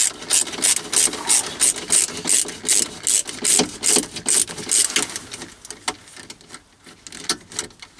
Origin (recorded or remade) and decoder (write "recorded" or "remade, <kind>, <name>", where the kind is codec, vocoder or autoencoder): recorded